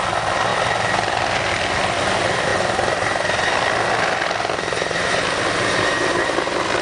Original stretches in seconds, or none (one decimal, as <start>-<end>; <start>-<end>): 0.0-6.8